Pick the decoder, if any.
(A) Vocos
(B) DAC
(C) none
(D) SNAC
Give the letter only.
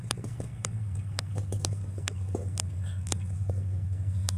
D